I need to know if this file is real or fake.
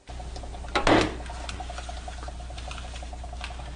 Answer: real